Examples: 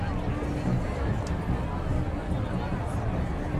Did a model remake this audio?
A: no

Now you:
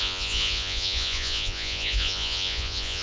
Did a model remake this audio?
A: yes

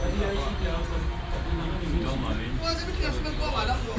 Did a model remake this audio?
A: no